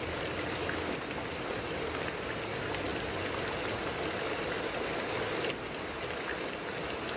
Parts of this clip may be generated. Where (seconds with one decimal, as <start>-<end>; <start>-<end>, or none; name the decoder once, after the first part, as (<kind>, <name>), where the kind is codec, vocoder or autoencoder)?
none